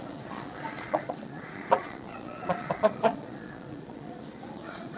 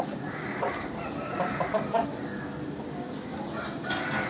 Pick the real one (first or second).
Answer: second